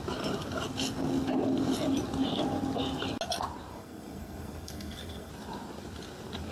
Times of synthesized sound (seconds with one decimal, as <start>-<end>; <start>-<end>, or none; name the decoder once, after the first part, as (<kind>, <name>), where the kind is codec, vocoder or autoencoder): 3.7-5.3 (codec, SNAC)